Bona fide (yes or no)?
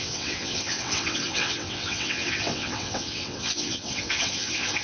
no